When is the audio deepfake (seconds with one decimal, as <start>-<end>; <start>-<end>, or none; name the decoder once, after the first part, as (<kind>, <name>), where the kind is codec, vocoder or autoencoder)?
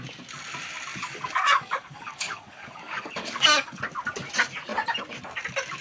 0.9-3.8 (codec, DAC)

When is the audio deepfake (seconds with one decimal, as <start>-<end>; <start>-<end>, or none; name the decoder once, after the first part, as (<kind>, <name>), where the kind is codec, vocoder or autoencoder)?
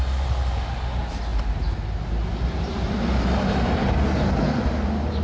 none